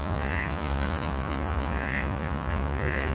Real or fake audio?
fake